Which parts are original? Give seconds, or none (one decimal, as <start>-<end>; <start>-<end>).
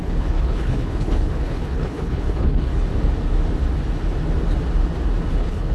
2.7-5.3